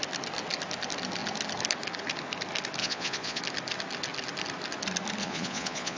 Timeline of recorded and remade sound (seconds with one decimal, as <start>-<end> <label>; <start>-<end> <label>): 0.0-2.8 recorded; 2.8-3.4 remade; 3.4-5.2 recorded; 5.2-6.0 remade